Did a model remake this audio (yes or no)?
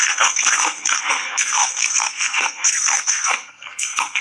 yes